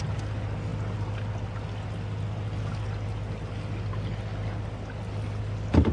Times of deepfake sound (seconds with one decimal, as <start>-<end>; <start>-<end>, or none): none